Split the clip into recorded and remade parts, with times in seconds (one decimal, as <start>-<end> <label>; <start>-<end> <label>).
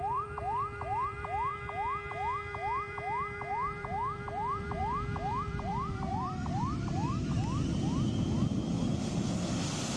0.0-1.5 remade; 1.5-2.1 recorded; 2.1-8.1 remade; 8.1-9.6 recorded; 9.6-10.0 remade